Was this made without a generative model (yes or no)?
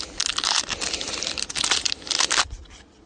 yes